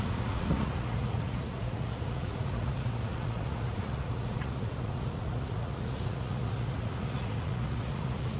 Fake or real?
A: fake